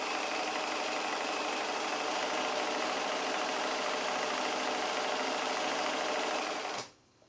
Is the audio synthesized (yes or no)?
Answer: no